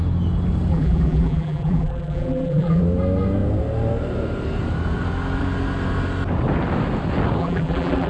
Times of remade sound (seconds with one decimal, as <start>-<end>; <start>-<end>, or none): 0.7-2.8; 7.4-8.1